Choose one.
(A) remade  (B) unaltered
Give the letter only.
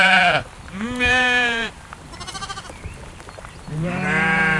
A